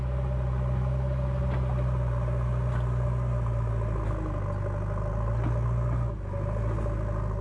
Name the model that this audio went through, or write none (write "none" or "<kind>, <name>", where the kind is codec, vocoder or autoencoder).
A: none